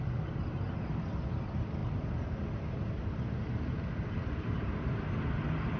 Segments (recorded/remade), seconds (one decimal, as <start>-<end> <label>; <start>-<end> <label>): 0.0-5.8 recorded